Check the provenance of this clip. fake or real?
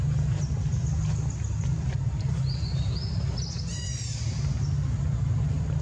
real